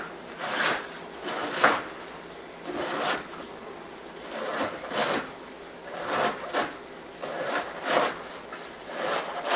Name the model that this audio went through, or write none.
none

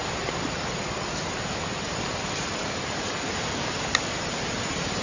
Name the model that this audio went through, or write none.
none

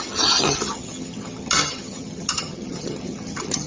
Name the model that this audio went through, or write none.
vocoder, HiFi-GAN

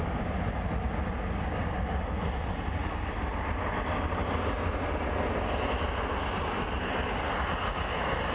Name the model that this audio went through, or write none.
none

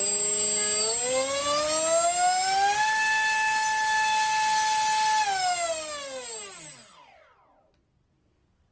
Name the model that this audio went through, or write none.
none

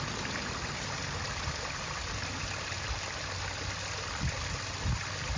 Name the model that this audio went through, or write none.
none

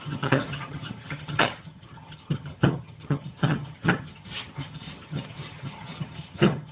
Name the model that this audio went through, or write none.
vocoder, HiFi-GAN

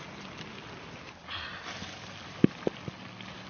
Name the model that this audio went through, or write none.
none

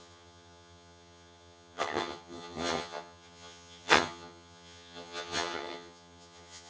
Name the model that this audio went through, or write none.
vocoder, HiFi-GAN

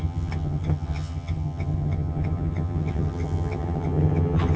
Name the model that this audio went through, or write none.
vocoder, HiFi-GAN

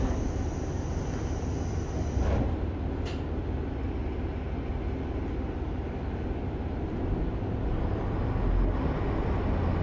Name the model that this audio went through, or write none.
none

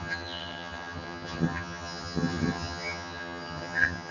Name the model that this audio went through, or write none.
vocoder, HiFi-GAN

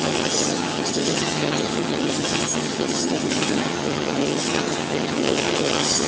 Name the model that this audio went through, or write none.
vocoder, HiFi-GAN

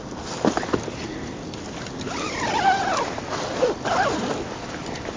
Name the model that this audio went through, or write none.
none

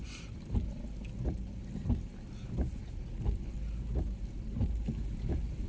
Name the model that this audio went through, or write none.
none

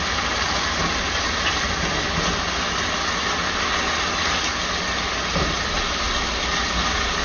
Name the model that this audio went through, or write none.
none